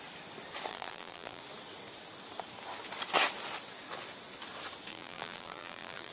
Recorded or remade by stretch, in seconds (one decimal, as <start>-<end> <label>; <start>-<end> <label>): 0.0-0.7 recorded; 0.7-1.4 remade; 1.4-4.9 recorded; 4.9-6.1 remade